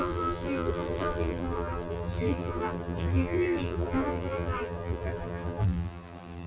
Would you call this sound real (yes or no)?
no